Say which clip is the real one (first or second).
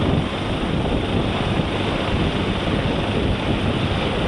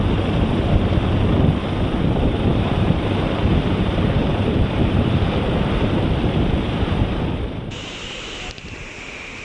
first